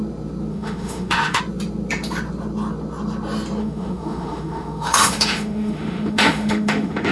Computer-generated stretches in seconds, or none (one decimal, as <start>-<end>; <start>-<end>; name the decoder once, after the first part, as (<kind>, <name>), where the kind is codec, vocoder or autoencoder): 0.5-1.4 (autoencoder, DAC-VAE); 3.6-7.1